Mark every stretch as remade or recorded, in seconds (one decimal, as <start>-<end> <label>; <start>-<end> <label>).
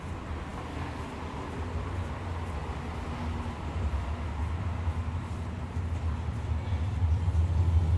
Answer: 0.0-8.0 recorded